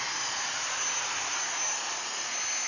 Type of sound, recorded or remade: recorded